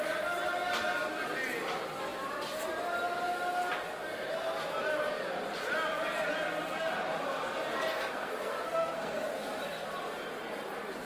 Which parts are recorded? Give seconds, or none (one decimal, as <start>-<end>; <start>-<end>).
0.0-8.0; 9.2-11.1